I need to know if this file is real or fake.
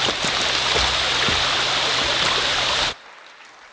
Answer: real